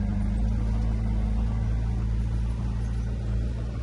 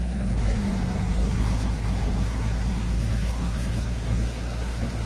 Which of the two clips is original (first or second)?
first